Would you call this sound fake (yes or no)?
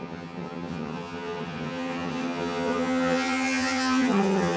yes